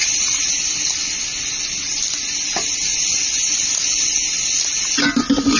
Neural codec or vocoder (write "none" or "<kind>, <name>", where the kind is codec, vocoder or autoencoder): none